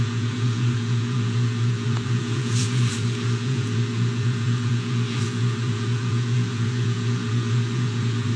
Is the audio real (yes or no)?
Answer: no